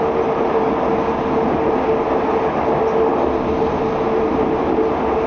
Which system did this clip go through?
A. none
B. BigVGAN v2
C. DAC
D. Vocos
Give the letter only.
A